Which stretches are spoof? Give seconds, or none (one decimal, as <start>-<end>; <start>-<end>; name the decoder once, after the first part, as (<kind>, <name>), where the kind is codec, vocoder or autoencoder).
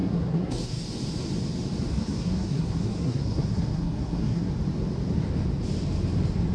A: 0.0-0.8 (codec, SNAC); 1.9-4.5